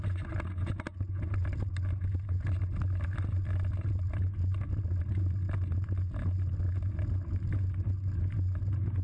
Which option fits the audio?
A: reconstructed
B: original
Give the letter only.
B